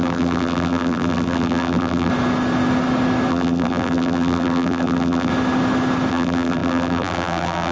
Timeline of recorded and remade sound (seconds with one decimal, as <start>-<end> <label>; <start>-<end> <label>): 0.0-2.1 remade; 2.1-3.3 recorded; 3.3-5.3 remade; 5.3-6.1 recorded; 6.1-7.7 remade